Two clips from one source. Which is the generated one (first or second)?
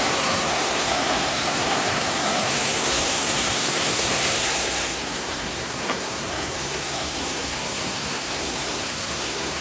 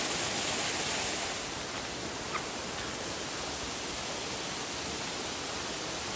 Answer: first